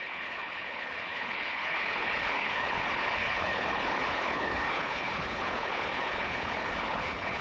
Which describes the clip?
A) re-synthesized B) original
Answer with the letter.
A